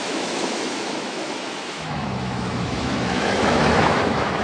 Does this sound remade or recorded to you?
remade